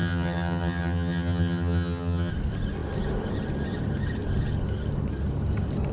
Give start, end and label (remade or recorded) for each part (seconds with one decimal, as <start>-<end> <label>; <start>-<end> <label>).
0.0-2.3 remade; 2.3-5.9 recorded